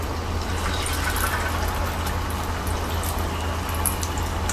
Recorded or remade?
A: recorded